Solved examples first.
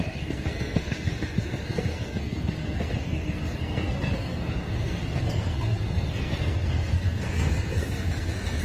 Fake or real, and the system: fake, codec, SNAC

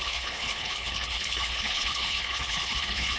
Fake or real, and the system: fake, codec, HILCodec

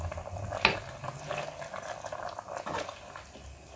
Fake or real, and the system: real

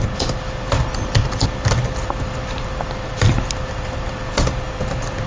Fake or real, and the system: real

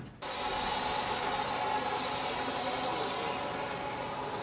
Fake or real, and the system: real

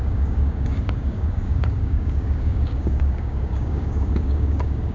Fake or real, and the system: fake, codec, DAC